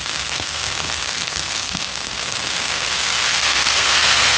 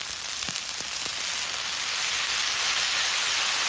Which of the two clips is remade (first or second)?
first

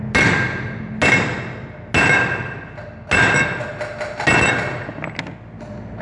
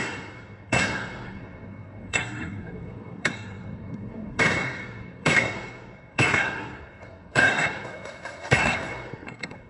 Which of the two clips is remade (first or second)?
second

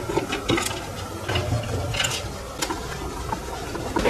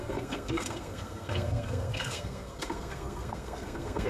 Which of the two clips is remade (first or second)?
second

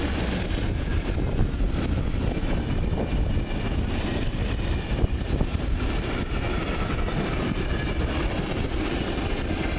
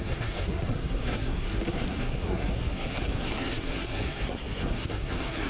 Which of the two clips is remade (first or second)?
second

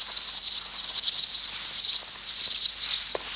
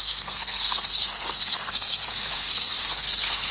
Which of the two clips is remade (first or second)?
second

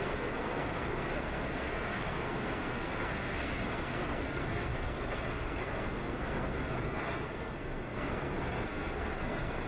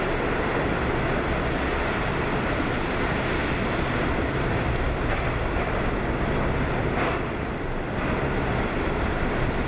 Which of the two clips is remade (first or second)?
first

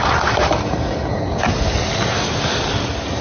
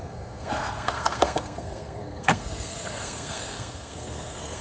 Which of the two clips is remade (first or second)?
second